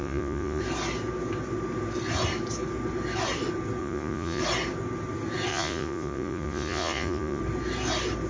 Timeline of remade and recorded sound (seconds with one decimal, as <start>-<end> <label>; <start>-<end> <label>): 0.0-0.6 remade; 0.6-3.8 recorded; 3.8-4.4 remade; 4.4-5.5 recorded; 5.5-7.4 remade; 7.4-8.3 recorded